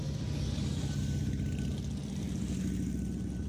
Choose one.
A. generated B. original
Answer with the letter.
B